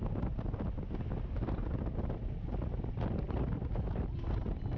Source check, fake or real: real